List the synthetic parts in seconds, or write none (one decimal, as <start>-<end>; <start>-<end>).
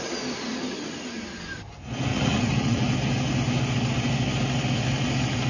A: 2.1-2.8